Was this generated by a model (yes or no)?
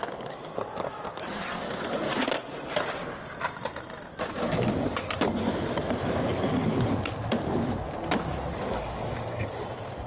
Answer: no